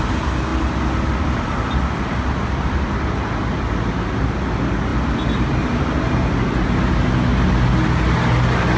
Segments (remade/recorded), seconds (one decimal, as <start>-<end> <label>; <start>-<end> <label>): 0.0-8.8 recorded